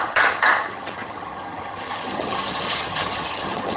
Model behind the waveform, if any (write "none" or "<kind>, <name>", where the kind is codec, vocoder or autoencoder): vocoder, HiFi-GAN